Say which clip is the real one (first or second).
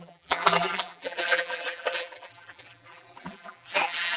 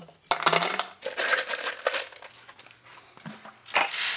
second